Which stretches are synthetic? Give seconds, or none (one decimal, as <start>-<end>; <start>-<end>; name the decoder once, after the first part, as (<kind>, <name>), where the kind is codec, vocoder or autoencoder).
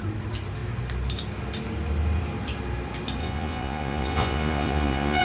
3.2-5.2 (vocoder, Vocos)